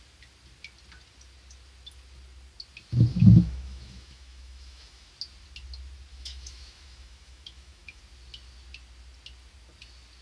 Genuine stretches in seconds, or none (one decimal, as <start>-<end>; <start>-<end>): 0.0-3.1; 5.1-6.1; 8.0-10.2